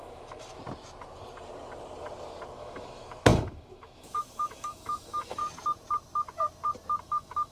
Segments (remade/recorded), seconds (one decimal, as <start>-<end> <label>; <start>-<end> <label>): 0.0-0.5 remade; 0.5-2.6 recorded; 2.6-5.4 remade; 5.4-7.0 recorded; 7.0-7.5 remade